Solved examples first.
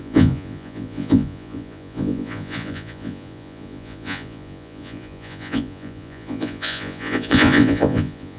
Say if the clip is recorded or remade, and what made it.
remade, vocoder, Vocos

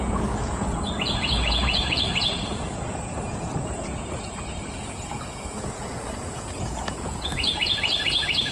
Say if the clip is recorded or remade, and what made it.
remade, vocoder, Vocos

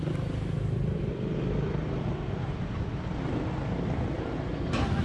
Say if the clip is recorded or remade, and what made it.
recorded